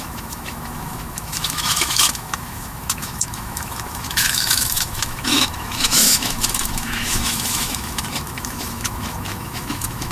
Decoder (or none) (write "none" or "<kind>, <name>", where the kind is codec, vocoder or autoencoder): autoencoder, DAC-VAE